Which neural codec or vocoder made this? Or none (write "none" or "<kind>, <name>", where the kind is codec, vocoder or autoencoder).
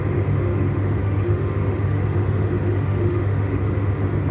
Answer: autoencoder, DAC-VAE